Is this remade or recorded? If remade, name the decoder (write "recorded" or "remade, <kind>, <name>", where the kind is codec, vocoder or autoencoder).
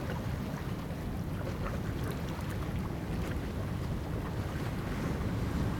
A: recorded